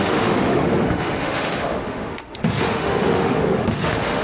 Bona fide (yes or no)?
no